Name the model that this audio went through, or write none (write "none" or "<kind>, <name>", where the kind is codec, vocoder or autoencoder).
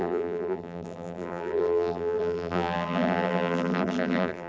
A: vocoder, BigVGAN v2